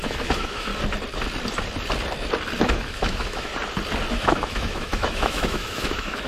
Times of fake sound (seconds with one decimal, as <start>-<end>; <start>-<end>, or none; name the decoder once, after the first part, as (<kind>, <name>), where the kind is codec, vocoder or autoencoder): 0.0-0.7 (autoencoder, DAC-VAE); 2.6-3.5; 4.1-6.3